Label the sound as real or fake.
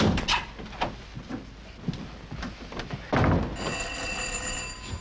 real